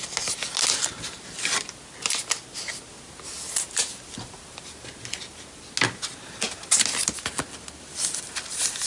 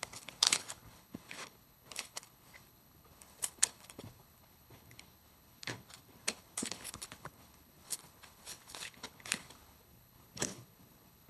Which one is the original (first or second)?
first